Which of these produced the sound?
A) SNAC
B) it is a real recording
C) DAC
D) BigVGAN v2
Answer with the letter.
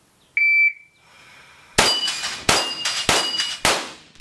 B